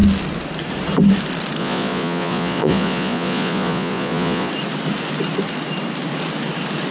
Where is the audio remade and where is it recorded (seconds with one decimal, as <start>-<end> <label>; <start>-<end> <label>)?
0.0-1.6 recorded; 1.6-4.5 remade; 4.5-6.9 recorded